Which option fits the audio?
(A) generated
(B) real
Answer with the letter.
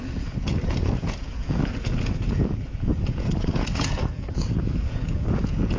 A